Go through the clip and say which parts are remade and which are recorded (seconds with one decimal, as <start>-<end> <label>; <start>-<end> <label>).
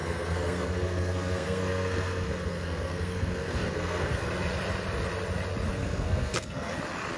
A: 0.0-4.3 remade; 4.3-5.7 recorded; 5.7-6.8 remade; 6.8-7.2 recorded